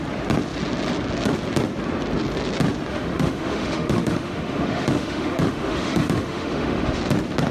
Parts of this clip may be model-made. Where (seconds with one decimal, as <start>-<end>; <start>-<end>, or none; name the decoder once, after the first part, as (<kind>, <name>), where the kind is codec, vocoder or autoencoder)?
2.9-7.0 (autoencoder, DAC-VAE)

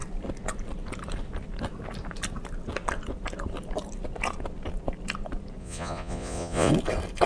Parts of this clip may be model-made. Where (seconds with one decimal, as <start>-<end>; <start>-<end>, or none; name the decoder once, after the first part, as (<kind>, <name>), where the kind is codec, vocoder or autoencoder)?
5.6-6.7 (vocoder, Vocos)